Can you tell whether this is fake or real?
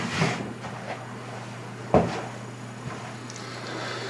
real